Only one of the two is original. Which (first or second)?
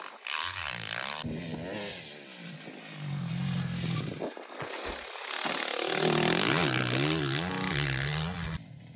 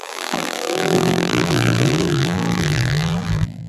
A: first